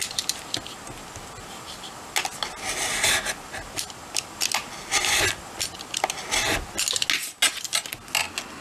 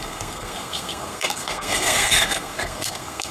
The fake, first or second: second